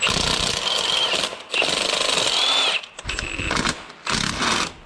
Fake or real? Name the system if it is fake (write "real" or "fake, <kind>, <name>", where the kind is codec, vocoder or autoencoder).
real